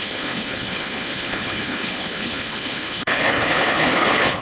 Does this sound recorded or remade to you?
remade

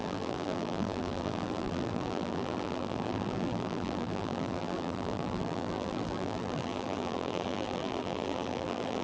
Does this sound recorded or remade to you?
remade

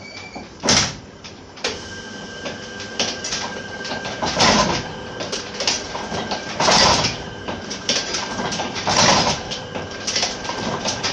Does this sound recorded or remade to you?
remade